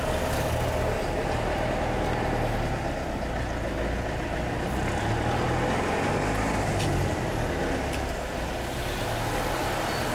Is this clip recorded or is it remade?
recorded